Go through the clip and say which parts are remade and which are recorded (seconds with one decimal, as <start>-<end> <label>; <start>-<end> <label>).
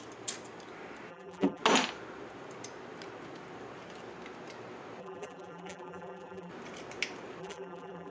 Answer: 0.0-1.1 recorded; 1.1-1.6 remade; 1.6-5.0 recorded; 5.0-6.5 remade; 6.5-7.4 recorded; 7.4-8.1 remade